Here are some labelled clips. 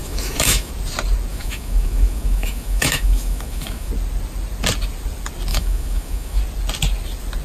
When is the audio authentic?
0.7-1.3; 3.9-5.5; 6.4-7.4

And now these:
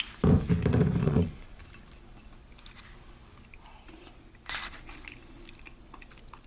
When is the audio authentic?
0.0-1.0; 1.6-6.5

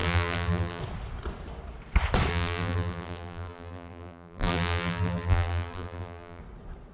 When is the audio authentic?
0.8-2.3; 6.4-6.9

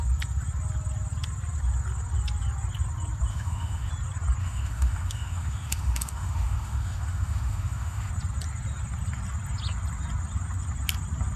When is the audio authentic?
0.0-3.3; 3.9-4.4; 8.1-11.4